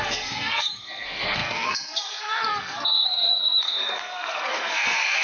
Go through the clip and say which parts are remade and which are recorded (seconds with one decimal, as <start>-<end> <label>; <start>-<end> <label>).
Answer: 0.0-5.2 remade